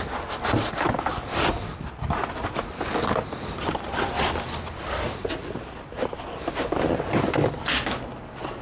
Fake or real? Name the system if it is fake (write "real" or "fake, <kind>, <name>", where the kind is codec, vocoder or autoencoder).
real